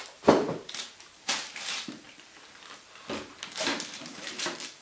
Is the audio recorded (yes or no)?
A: no